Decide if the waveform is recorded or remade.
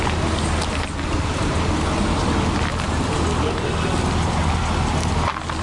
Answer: recorded